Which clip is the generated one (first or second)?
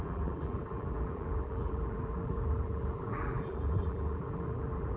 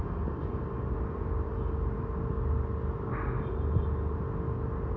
first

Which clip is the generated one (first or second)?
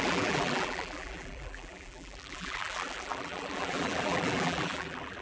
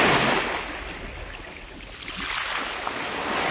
first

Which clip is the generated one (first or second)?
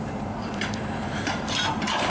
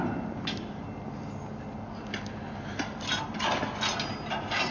first